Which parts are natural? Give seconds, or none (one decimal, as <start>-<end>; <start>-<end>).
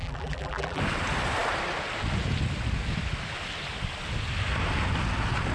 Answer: 0.8-5.5